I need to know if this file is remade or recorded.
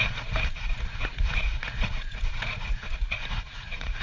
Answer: remade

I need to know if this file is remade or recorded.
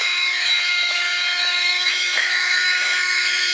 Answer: remade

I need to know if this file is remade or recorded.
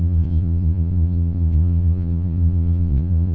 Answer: remade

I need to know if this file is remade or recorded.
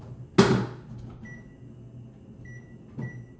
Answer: recorded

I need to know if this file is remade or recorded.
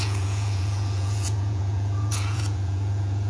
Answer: remade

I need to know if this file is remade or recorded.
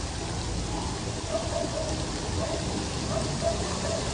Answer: recorded